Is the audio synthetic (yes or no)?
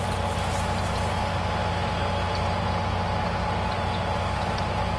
no